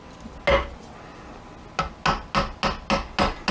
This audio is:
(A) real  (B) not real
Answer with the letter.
A